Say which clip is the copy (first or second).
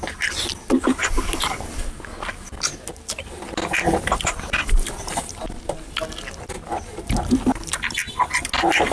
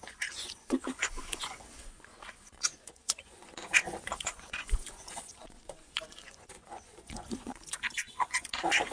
second